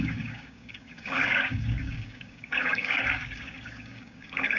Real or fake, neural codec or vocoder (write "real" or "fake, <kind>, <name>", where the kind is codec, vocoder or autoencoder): fake, codec, DAC